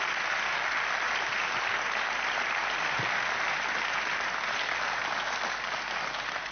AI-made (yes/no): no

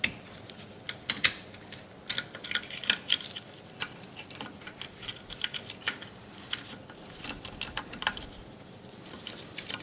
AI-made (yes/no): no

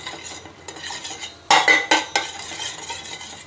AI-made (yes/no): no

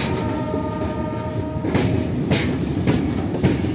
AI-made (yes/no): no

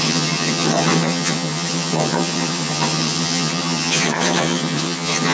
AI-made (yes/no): yes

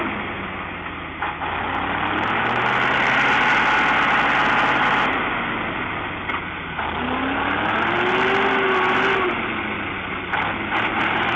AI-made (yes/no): no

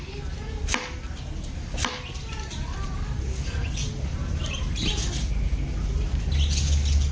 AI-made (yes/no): no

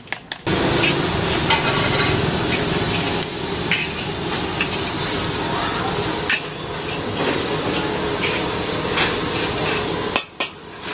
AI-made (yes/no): no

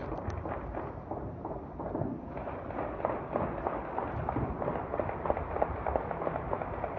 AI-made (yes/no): no